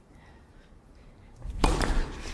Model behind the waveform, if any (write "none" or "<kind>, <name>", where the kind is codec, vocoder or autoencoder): vocoder, BigVGAN v2